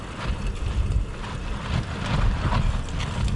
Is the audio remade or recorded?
recorded